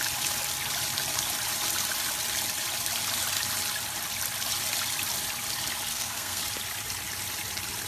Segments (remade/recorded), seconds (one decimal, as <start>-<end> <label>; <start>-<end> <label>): 0.0-5.9 recorded; 5.9-6.4 remade; 6.4-7.9 recorded